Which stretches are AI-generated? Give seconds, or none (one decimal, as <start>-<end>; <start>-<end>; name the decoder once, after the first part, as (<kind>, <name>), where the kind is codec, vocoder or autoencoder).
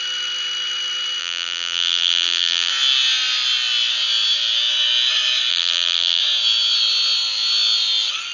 1.2-2.7 (vocoder, BigVGAN v2); 5.5-6.2